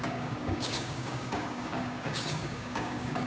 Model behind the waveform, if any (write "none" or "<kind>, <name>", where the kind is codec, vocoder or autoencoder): codec, DAC